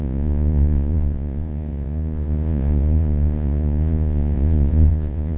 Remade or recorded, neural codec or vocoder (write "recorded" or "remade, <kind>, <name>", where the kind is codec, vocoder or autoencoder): remade, vocoder, Vocos